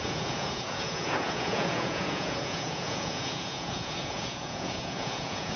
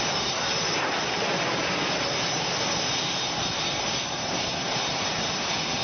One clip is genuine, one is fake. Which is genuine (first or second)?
second